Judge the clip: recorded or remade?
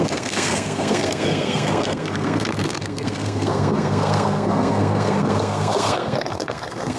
remade